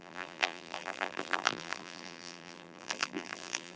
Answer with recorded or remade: remade